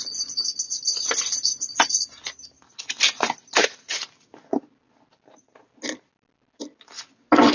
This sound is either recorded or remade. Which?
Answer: recorded